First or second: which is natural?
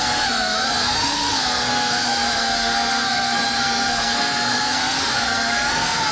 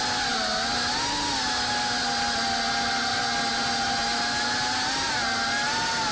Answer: second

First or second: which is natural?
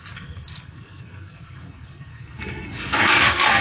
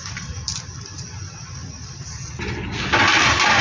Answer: second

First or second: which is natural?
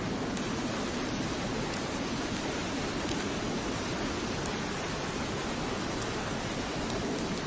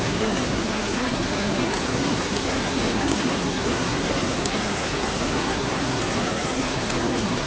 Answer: first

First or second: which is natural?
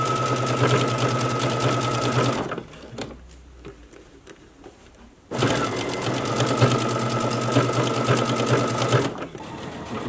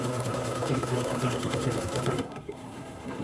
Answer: first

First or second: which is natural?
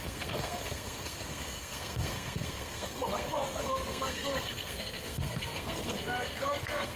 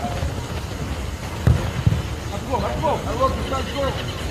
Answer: second